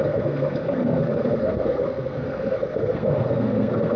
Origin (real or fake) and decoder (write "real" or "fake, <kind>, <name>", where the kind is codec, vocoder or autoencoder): fake, codec, SNAC